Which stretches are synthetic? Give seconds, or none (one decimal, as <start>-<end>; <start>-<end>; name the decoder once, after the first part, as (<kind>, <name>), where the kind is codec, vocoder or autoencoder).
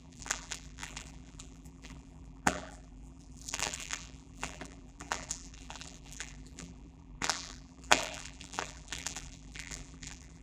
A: 0.0-10.4 (vocoder, BigVGAN v2)